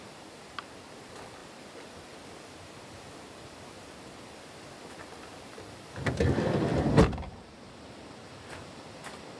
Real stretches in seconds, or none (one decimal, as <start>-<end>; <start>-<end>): 1.4-2.8; 6.7-7.5